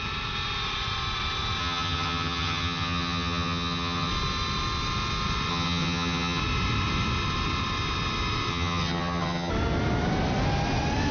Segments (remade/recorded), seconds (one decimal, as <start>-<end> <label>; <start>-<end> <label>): 0.0-1.6 recorded; 1.6-4.1 remade; 4.1-5.5 recorded; 5.5-6.4 remade; 6.4-8.5 recorded; 8.5-9.5 remade; 9.5-11.1 recorded